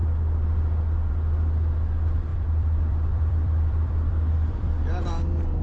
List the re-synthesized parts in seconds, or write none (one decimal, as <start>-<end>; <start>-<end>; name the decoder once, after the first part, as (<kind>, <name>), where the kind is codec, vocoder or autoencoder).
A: 2.3-4.7 (vocoder, BigVGAN v2)